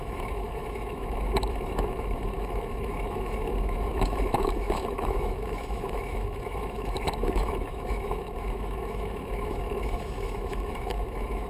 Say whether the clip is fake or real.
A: fake